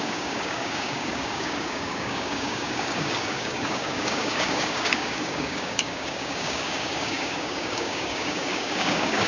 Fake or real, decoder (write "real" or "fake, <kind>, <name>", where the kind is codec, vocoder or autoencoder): fake, codec, DAC